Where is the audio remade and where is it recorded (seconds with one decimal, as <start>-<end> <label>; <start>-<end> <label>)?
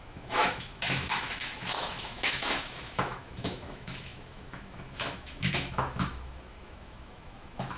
0.0-7.8 remade